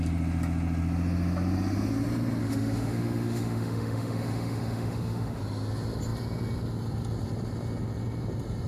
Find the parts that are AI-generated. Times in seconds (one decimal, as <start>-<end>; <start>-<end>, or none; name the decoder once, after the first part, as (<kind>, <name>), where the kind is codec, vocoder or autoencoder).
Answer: 2.4-5.4 (autoencoder, DAC-VAE)